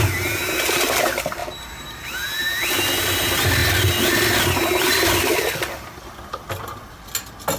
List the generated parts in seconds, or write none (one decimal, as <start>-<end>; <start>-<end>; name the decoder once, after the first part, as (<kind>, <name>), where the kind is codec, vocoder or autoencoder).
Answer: none